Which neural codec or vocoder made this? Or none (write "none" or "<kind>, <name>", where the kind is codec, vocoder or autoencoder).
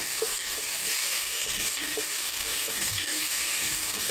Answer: codec, DAC